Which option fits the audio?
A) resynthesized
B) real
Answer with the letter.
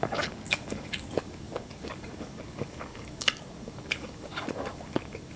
A